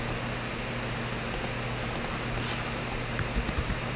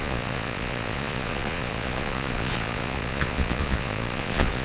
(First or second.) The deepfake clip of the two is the second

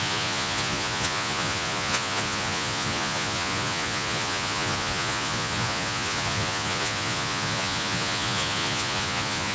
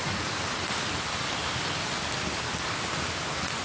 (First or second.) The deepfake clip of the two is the first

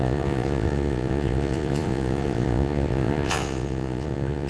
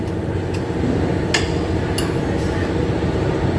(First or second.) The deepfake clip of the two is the first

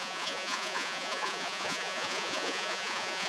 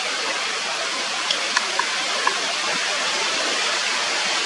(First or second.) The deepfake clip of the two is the first